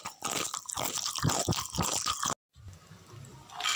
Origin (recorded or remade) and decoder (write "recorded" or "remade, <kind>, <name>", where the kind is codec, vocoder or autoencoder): recorded